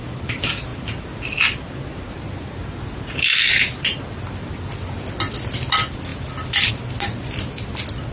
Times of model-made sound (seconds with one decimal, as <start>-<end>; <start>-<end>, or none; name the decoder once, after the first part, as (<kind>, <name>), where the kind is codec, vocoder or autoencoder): 6.1-6.7 (vocoder, BigVGAN v2)